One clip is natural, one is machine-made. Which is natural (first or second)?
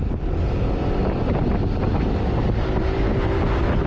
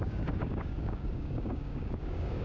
first